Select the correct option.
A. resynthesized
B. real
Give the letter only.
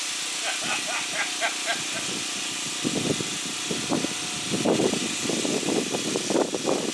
B